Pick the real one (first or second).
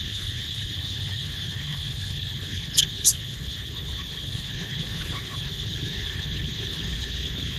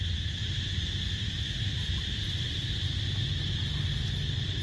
second